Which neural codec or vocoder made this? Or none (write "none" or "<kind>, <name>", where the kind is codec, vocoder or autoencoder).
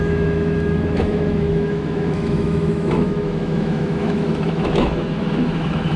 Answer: autoencoder, DAC-VAE